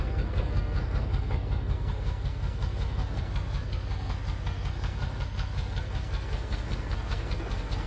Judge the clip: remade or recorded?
remade